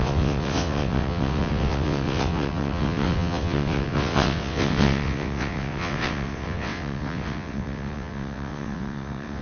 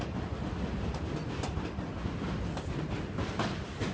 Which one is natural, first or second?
second